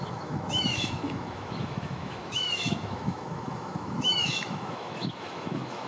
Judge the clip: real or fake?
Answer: fake